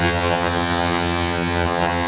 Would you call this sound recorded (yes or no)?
no